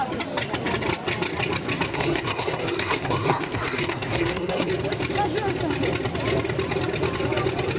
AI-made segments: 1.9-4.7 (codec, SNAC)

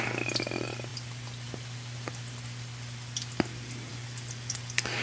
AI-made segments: none